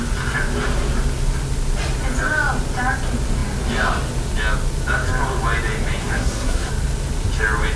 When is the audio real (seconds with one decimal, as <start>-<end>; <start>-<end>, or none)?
0.0-6.0; 6.7-7.8